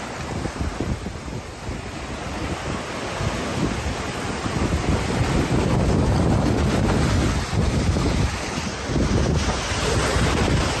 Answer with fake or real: real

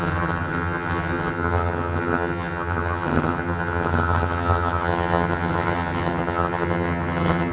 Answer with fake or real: fake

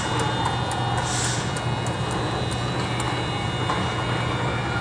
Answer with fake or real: real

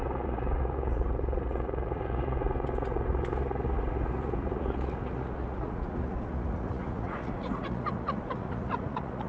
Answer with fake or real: fake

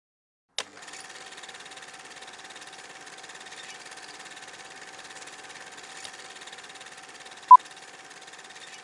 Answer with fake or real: real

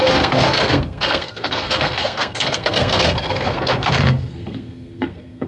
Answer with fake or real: fake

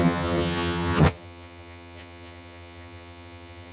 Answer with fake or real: fake